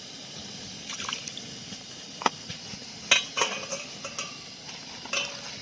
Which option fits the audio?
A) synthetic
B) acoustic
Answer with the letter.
B